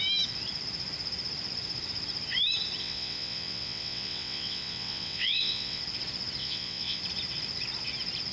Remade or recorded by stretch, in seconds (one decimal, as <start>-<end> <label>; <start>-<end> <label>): 0.0-2.8 recorded; 2.8-5.8 remade; 5.8-6.4 recorded; 6.4-7.0 remade; 7.0-8.3 recorded